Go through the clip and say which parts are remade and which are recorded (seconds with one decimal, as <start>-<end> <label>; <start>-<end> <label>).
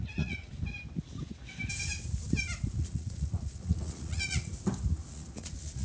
0.0-0.5 remade; 0.5-2.8 recorded; 2.8-4.5 remade; 4.5-5.1 recorded; 5.1-5.8 remade